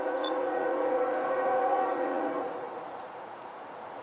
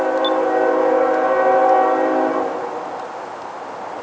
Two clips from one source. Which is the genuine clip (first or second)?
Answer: second